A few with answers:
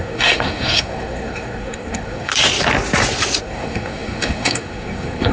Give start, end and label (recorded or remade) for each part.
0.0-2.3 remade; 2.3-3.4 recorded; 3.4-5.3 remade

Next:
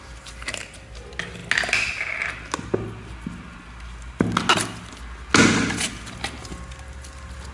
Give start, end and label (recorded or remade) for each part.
0.0-7.5 recorded

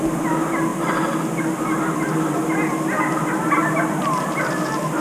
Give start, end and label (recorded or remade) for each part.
0.0-5.0 recorded

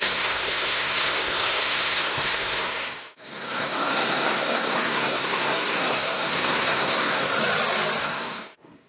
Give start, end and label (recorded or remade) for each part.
0.0-7.3 remade; 7.3-8.0 recorded; 8.0-8.9 remade

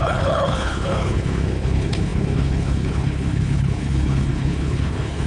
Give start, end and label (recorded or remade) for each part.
0.0-5.3 remade

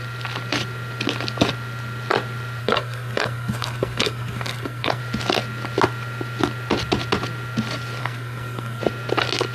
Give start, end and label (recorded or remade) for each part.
0.0-2.6 recorded; 2.6-5.0 remade; 5.0-8.0 recorded; 8.0-8.8 remade; 8.8-9.5 recorded

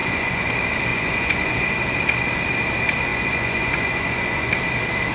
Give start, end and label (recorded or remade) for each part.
0.0-0.5 remade; 0.5-0.9 recorded; 0.9-1.6 remade; 1.6-3.1 recorded; 3.1-4.5 remade; 4.5-5.1 recorded

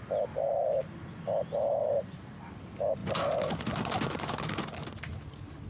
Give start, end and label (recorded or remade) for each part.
0.0-1.8 recorded; 1.8-2.5 remade; 2.5-5.7 recorded